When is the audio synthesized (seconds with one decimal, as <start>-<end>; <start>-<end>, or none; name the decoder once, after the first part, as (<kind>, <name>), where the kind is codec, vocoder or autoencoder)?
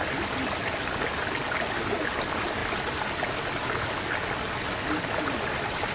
none